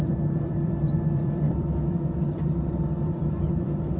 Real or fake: fake